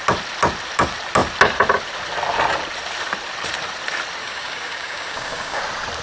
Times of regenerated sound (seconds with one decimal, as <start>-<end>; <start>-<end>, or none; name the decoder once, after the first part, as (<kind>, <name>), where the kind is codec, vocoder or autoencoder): 4.2-5.6 (codec, DAC)